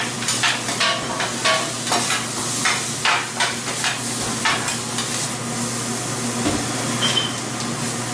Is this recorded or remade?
recorded